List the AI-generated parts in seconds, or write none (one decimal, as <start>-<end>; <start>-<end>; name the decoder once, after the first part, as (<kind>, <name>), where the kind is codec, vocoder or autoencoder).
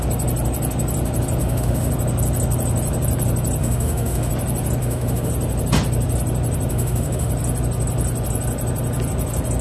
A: 1.4-1.9 (autoencoder, DAC-VAE); 3.6-4.3; 4.8-5.3; 6.7-7.3